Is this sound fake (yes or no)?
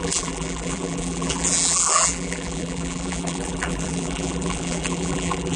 yes